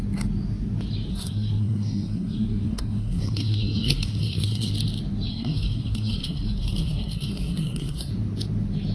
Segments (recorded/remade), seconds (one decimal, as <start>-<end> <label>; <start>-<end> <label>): 0.0-1.1 recorded; 1.1-4.7 remade; 4.7-5.3 recorded; 5.3-8.1 remade; 8.1-8.9 recorded